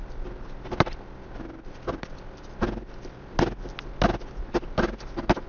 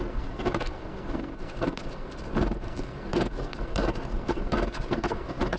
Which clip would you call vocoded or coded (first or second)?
second